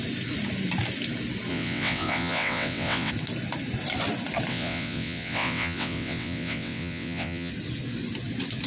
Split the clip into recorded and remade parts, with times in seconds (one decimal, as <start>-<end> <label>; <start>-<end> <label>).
0.0-1.5 recorded; 1.5-3.1 remade; 3.1-4.5 recorded; 4.5-7.5 remade; 7.5-8.7 recorded